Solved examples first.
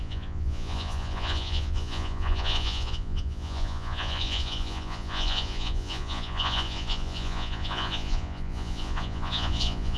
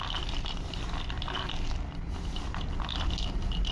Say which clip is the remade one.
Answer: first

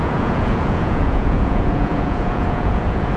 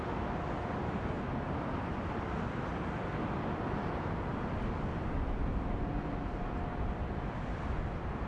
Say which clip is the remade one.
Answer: first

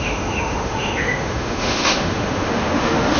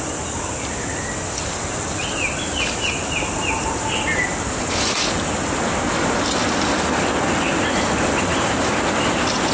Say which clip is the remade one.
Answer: first